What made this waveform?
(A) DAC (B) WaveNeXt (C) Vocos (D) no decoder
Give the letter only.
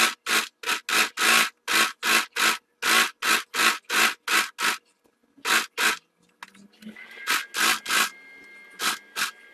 D